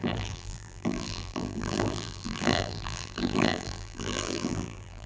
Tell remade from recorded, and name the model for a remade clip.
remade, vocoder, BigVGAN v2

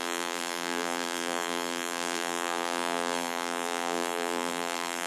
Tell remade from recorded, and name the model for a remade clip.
remade, vocoder, BigVGAN v2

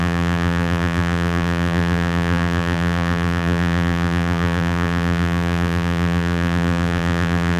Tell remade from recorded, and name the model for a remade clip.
remade, vocoder, BigVGAN v2